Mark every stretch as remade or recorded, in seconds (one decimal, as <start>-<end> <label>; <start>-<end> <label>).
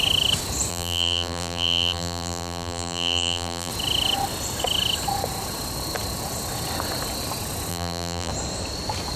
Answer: 0.0-0.7 recorded; 0.7-3.7 remade; 3.7-7.7 recorded; 7.7-8.3 remade; 8.3-9.2 recorded